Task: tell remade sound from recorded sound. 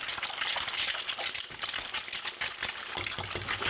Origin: recorded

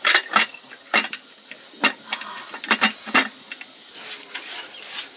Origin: recorded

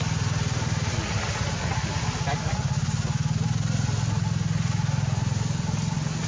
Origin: recorded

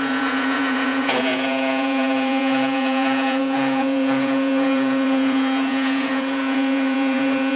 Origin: remade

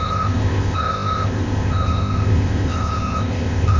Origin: remade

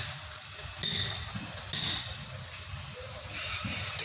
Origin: recorded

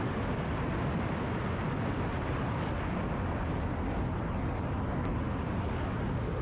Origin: recorded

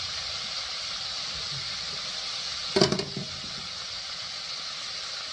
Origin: recorded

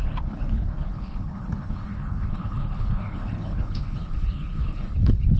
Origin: remade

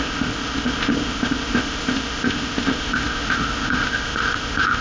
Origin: remade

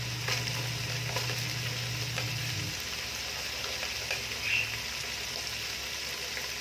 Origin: recorded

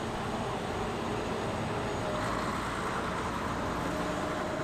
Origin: recorded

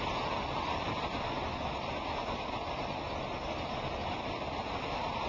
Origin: recorded